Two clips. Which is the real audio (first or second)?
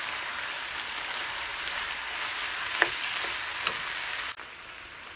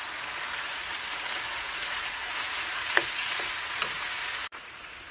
first